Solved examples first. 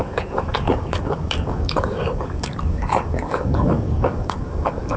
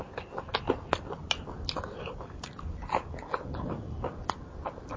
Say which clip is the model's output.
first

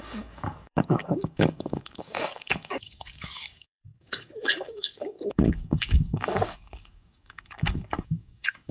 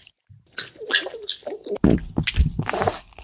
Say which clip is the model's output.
first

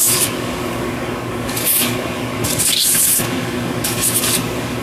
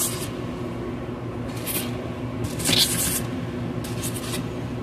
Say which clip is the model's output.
first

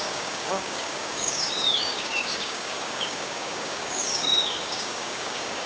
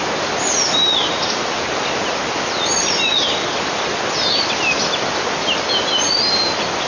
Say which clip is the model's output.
first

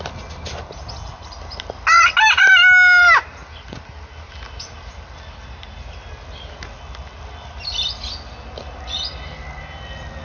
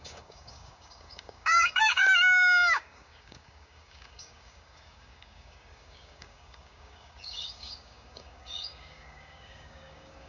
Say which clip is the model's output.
second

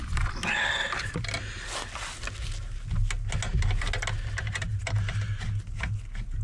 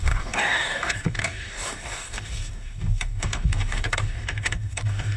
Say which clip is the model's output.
second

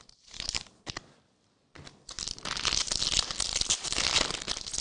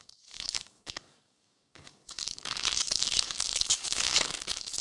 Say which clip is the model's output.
second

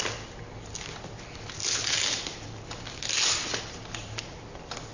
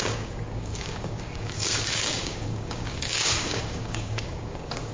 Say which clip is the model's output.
second